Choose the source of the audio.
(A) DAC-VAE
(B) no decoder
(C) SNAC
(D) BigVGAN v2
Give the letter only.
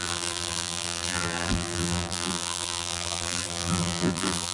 D